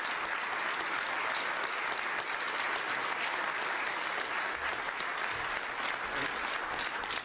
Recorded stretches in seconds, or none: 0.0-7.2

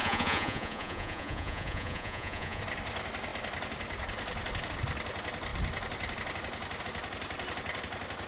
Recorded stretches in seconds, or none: 2.6-8.3

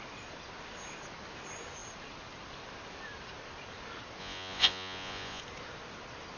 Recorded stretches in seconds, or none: 0.0-4.2; 5.4-6.4

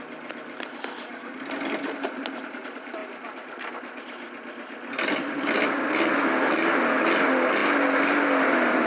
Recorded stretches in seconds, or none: 0.0-8.9

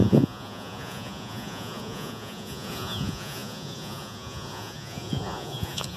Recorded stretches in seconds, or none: none

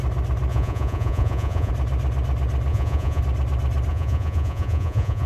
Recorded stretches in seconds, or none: 0.0-0.5; 1.7-2.7; 3.2-3.9